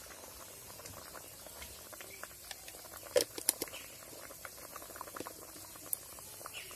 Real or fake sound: real